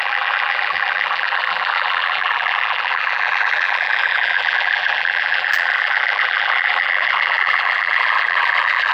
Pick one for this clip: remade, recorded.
remade